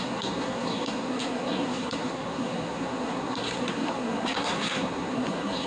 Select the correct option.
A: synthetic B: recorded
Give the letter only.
A